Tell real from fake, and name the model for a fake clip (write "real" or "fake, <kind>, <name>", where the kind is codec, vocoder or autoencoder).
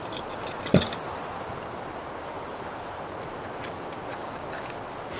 real